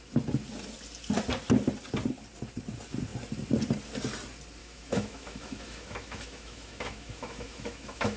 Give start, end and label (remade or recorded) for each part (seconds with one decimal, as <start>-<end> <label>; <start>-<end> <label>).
0.0-4.6 recorded; 4.6-8.2 remade